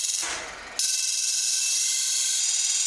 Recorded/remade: recorded